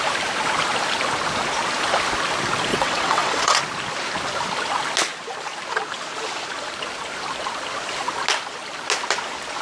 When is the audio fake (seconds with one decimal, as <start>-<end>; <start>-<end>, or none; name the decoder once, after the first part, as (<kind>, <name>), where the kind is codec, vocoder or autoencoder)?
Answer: 2.7-3.6 (vocoder, WaveNeXt)